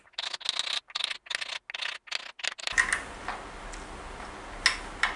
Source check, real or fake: real